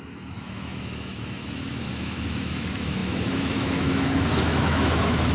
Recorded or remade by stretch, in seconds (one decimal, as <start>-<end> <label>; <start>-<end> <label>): 0.0-5.3 remade